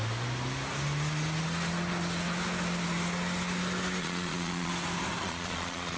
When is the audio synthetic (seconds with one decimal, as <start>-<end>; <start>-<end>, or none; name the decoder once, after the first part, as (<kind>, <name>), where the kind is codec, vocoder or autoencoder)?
4.0-4.7 (vocoder, Vocos); 5.2-6.0